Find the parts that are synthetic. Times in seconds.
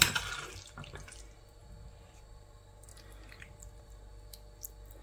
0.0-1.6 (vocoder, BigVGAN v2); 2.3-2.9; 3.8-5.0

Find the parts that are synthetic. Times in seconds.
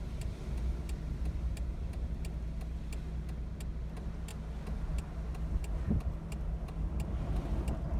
none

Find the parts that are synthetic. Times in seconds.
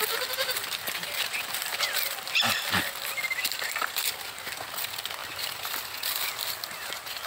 1.7-4.4 (vocoder, BigVGAN v2); 5.2-6.2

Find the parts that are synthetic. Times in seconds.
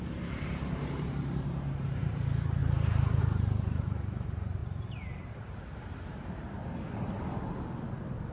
0.0-4.6 (vocoder, BigVGAN v2); 5.3-6.6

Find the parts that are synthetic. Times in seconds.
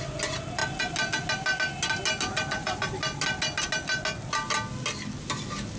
none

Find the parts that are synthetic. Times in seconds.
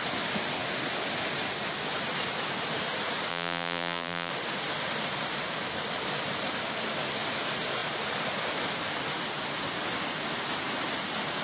3.3-4.3 (vocoder, BigVGAN v2)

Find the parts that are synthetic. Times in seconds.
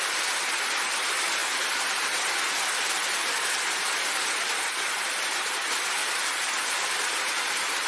6.0-6.8 (vocoder, BigVGAN v2)